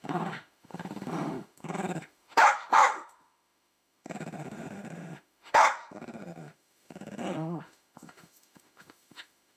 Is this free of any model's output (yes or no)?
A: no